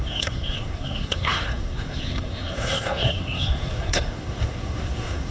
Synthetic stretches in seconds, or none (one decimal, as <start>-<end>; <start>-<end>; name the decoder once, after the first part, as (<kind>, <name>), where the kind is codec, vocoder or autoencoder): 0.0-5.3 (codec, SNAC)